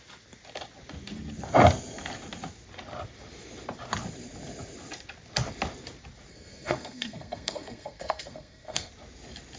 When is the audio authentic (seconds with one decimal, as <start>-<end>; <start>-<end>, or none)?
0.0-6.3; 8.9-9.6